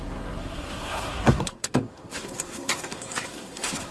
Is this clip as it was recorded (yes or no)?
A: no